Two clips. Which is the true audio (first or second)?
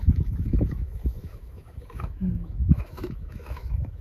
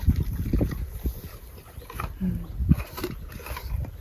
second